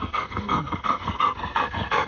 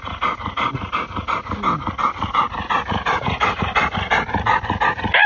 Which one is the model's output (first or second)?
first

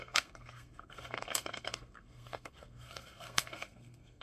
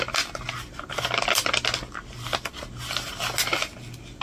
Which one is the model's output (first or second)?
first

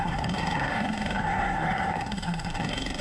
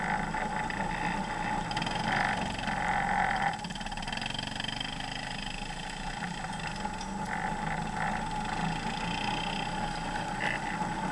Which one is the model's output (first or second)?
first